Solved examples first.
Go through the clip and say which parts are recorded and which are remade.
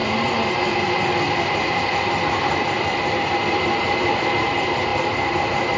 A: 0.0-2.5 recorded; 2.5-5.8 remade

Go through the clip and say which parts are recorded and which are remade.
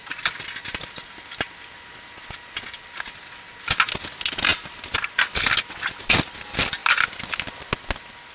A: 0.0-8.3 recorded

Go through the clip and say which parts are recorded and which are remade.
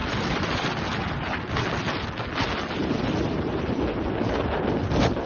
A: 0.0-0.6 remade; 0.6-2.8 recorded; 2.8-4.0 remade; 4.0-5.3 recorded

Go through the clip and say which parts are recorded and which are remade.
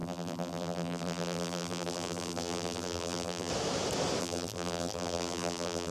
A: 0.0-3.5 remade; 3.5-4.2 recorded; 4.2-5.9 remade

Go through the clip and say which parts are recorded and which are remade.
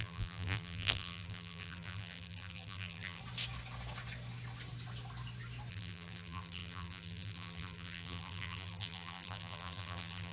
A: 0.0-3.2 remade; 3.2-5.7 recorded; 5.7-10.3 remade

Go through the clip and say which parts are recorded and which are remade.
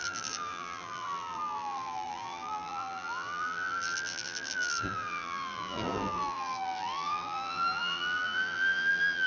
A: 0.0-9.3 remade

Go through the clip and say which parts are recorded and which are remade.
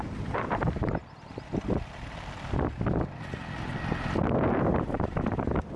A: 0.0-1.0 remade; 1.0-4.5 recorded; 4.5-5.8 remade